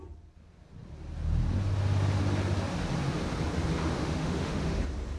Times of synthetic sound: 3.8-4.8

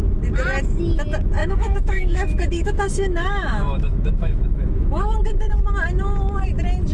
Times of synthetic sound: 1.4-5.5

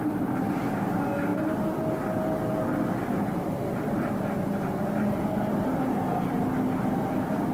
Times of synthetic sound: none